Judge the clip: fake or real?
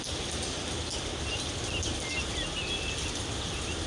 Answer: real